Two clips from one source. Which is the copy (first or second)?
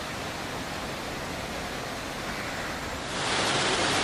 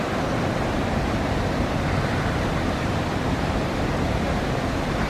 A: second